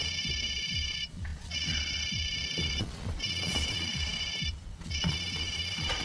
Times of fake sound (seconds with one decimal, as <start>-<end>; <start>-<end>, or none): 0.0-6.0

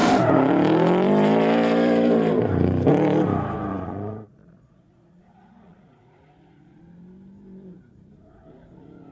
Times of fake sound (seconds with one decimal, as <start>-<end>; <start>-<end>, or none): 3.7-6.8

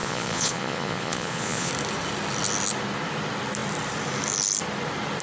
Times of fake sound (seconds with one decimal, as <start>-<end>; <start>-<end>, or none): 0.0-1.7

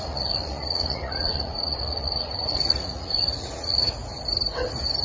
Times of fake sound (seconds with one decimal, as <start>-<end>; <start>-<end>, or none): 0.0-4.0